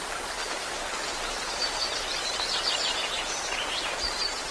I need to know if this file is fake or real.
real